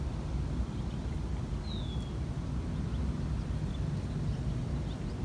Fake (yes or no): no